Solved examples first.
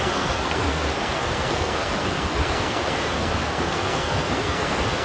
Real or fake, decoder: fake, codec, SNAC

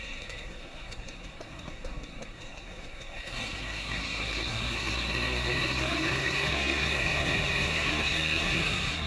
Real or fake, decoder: fake, codec, SNAC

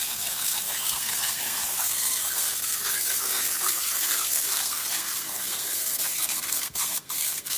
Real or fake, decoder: fake, codec, SNAC